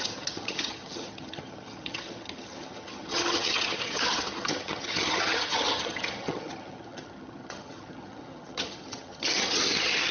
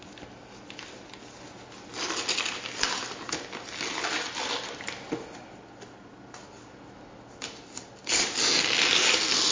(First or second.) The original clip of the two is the second